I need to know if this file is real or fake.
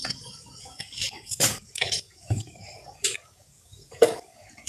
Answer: fake